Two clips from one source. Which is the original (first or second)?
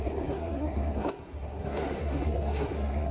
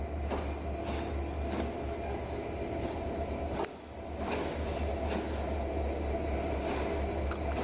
second